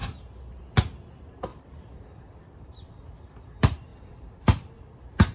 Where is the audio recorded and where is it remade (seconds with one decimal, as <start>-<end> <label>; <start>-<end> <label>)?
0.0-1.5 recorded; 1.5-3.0 remade; 3.0-3.9 recorded; 3.9-4.8 remade; 4.8-5.3 recorded